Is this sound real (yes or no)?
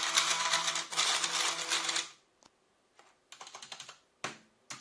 yes